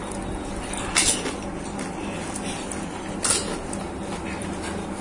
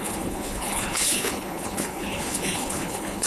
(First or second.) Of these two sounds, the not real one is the second